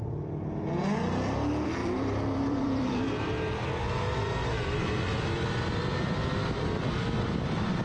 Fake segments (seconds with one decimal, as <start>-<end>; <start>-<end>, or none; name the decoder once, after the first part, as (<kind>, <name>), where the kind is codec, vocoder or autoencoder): 1.8-3.8 (vocoder, BigVGAN v2)